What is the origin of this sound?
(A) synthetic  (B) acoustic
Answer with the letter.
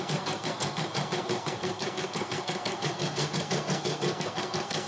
A